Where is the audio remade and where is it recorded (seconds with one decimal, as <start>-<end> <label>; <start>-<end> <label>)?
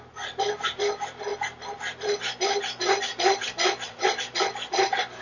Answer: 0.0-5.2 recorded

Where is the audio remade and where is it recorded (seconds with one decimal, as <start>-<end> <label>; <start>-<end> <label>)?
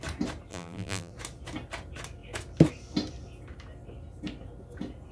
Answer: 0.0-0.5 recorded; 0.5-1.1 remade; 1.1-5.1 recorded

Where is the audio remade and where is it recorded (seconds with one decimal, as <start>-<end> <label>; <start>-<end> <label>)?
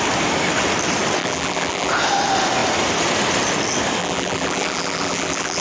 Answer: 0.0-1.2 recorded; 1.2-1.9 remade; 1.9-4.0 recorded; 4.0-5.6 remade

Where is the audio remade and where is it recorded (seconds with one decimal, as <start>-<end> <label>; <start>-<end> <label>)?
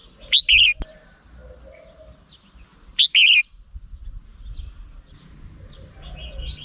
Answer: 0.0-6.6 recorded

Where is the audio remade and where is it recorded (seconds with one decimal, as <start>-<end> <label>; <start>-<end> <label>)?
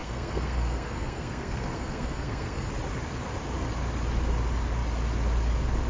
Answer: 0.0-2.7 remade; 2.7-5.9 recorded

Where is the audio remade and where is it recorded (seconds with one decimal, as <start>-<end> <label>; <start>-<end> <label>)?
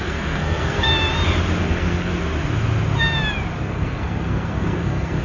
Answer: 0.0-0.9 remade; 0.9-1.6 recorded; 1.6-2.1 remade; 2.1-3.6 recorded; 3.6-5.2 remade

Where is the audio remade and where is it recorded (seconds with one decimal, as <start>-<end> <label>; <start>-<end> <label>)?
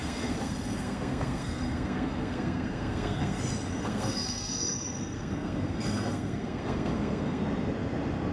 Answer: 0.0-3.4 remade; 3.4-3.8 recorded; 3.8-7.4 remade; 7.4-8.3 recorded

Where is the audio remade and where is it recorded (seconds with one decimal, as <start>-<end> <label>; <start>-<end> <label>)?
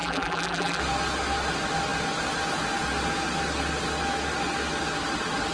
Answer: 0.0-0.8 remade; 0.8-5.5 recorded